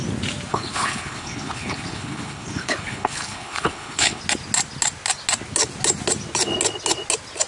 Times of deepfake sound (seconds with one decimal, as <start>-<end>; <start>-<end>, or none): 0.5-4.2